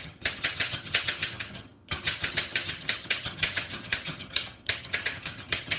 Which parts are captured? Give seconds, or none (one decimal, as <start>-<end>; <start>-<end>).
none